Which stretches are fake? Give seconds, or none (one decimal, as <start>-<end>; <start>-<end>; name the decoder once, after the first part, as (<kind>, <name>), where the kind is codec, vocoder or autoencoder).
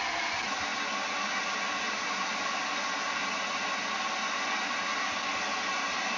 none